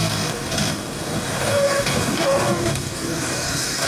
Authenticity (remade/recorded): remade